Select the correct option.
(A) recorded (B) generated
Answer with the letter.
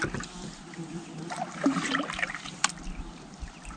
A